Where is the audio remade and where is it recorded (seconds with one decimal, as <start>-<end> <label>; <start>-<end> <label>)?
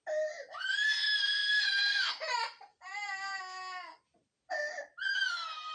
0.0-1.4 recorded; 1.4-2.1 remade; 2.1-2.7 recorded; 2.7-3.4 remade; 3.4-4.2 recorded; 4.2-5.0 remade; 5.0-5.7 recorded